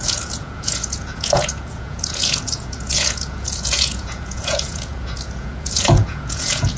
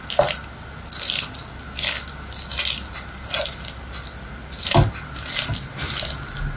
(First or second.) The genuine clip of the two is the second